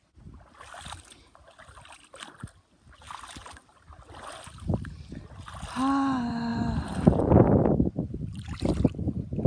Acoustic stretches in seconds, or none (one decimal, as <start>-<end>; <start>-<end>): 0.0-9.5